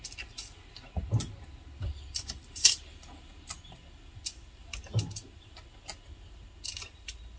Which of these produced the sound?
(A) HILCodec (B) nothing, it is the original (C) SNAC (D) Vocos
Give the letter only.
B